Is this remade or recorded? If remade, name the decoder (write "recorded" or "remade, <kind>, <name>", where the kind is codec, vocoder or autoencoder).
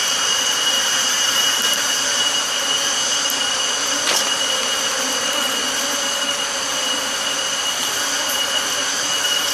recorded